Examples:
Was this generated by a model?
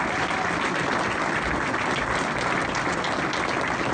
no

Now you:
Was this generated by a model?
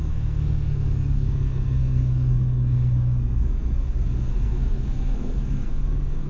yes